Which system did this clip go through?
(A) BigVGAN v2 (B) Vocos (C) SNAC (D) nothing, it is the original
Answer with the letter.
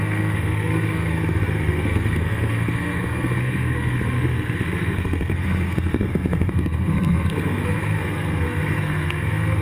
C